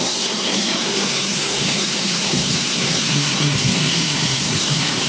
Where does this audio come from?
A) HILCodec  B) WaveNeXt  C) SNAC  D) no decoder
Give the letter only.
C